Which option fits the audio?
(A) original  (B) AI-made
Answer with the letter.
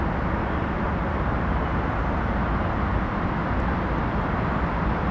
A